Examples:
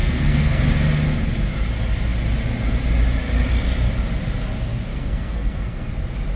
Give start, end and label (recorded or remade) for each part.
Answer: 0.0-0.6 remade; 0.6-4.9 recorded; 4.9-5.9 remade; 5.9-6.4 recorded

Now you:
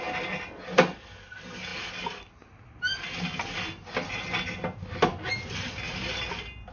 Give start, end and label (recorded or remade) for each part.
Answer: 0.0-6.7 recorded

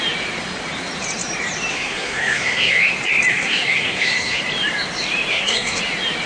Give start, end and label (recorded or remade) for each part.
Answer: 0.0-1.7 recorded; 1.7-2.9 remade; 2.9-3.3 recorded; 3.3-4.4 remade; 4.4-5.3 recorded; 5.3-5.8 remade; 5.8-6.3 recorded